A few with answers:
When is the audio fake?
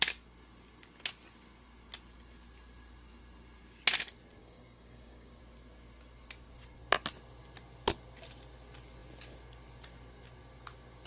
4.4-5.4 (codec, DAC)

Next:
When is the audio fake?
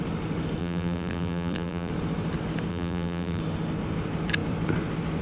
0.6-1.9 (vocoder, BigVGAN v2); 2.7-3.4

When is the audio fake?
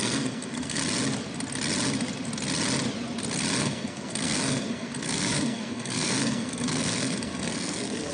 0.0-0.8 (codec, SNAC); 3.6-8.1